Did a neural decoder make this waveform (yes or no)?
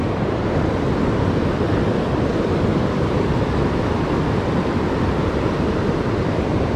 no